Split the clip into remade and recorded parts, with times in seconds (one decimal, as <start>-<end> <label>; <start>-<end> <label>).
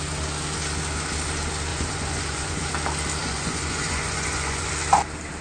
0.0-1.7 recorded; 1.7-2.7 remade; 2.7-3.2 recorded; 3.2-4.7 remade; 4.7-5.4 recorded